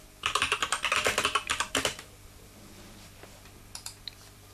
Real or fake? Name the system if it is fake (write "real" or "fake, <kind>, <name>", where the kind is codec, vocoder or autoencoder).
fake, vocoder, BigVGAN v2